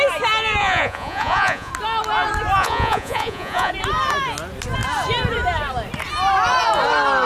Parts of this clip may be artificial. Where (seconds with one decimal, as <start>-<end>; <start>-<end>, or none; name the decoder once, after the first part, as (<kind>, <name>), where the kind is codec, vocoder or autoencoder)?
0.6-1.7 (vocoder, Vocos); 2.6-3.7